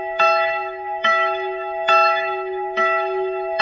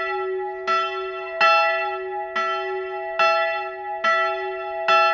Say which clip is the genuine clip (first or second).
second